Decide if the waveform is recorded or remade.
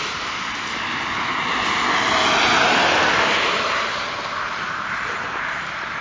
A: recorded